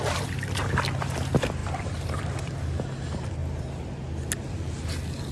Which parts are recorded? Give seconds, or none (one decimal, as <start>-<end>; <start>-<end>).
0.0-1.6; 2.2-3.4; 3.9-5.3